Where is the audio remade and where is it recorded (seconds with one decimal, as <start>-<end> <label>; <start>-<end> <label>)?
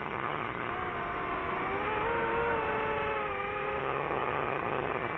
0.0-0.7 remade; 0.7-3.8 recorded; 3.8-5.2 remade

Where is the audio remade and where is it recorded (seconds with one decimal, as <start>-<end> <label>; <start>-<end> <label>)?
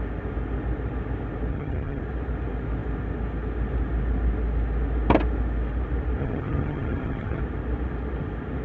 0.0-1.5 recorded; 1.5-2.0 remade; 2.0-6.2 recorded; 6.2-7.4 remade; 7.4-8.6 recorded